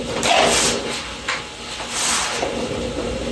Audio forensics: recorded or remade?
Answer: recorded